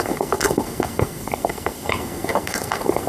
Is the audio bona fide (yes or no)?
no